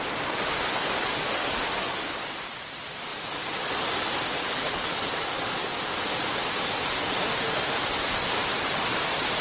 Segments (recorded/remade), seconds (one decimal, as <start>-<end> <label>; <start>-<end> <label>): 0.0-4.4 recorded; 4.4-5.0 remade; 5.0-9.4 recorded